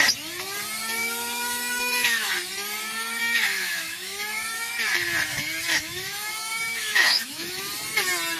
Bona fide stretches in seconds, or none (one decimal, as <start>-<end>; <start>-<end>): 0.0-1.0; 2.3-3.2; 4.7-5.7; 7.6-8.4